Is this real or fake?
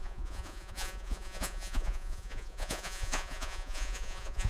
fake